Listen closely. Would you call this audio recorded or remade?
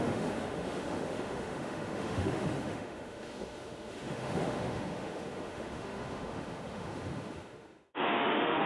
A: remade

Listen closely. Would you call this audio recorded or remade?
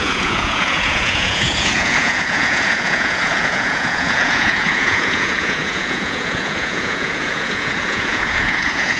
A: remade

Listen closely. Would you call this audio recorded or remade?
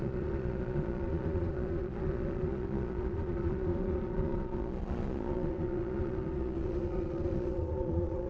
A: remade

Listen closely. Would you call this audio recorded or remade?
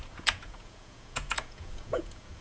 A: remade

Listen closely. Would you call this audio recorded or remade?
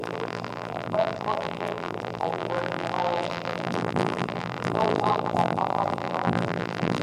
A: remade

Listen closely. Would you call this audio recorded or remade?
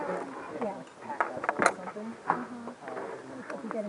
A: recorded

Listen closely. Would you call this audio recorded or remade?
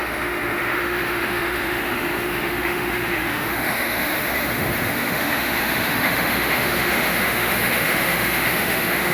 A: remade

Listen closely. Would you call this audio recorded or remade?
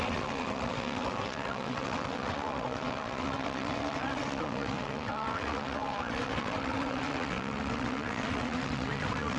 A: remade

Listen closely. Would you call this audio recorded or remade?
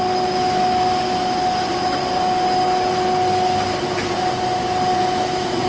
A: recorded